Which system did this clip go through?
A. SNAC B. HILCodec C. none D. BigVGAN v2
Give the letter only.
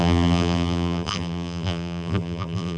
D